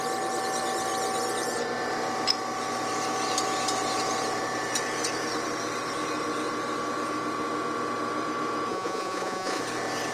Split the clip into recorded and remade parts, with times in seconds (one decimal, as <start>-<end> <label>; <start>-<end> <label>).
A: 0.0-8.7 recorded; 8.7-9.6 remade; 9.6-10.1 recorded